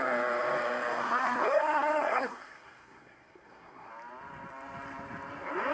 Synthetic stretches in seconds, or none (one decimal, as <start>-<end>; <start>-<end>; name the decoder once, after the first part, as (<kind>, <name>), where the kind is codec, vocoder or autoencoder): 1.0-3.9 (codec, SNAC)